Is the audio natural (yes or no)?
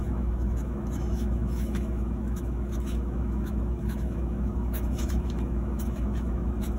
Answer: no